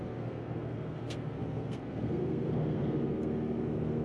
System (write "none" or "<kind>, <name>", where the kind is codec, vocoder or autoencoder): codec, SNAC